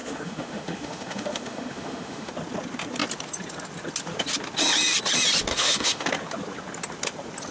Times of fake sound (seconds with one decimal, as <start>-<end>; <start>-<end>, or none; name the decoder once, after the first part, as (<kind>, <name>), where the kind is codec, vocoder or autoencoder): 0.0-2.3 (autoencoder, DAC-VAE); 5.5-6.1